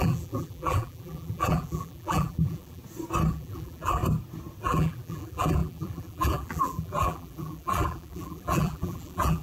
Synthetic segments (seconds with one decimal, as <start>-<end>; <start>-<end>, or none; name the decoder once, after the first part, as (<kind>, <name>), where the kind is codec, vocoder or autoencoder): 0.0-2.8 (vocoder, BigVGAN v2); 3.3-4.0; 4.6-9.4